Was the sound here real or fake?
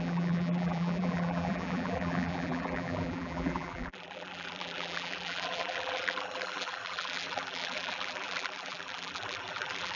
fake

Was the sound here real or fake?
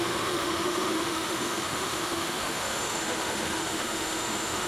fake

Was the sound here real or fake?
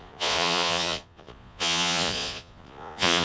fake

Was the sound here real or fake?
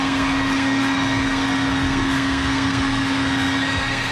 fake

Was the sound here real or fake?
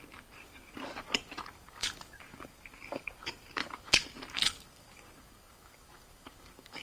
fake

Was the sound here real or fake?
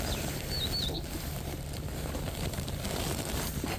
fake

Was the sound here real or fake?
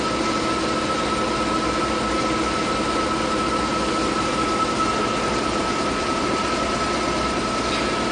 real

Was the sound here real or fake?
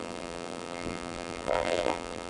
fake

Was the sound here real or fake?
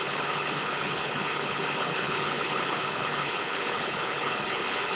fake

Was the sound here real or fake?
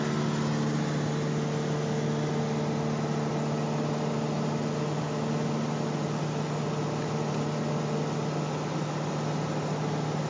real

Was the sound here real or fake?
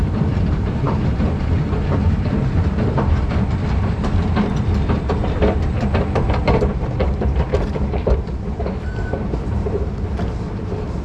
fake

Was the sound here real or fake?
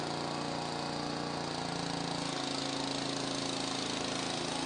real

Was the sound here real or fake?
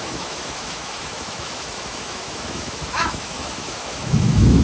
fake